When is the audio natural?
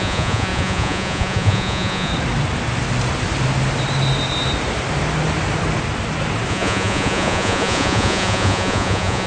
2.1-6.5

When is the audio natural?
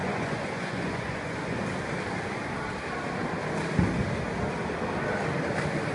1.6-5.9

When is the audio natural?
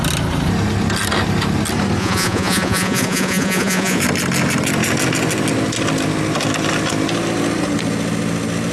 0.0-2.0; 4.0-8.7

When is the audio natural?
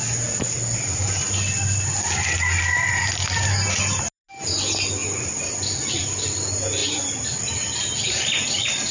0.0-8.9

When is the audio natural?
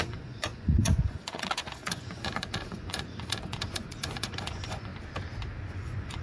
4.9-5.7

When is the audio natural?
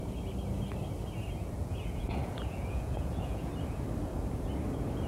0.0-1.6; 3.5-5.1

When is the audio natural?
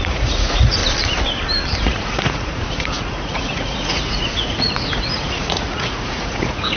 0.8-1.8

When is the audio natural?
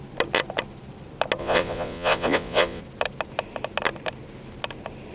0.0-1.4; 2.8-5.1